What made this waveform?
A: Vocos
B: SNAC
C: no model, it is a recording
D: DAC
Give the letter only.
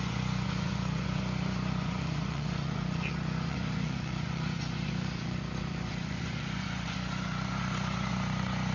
A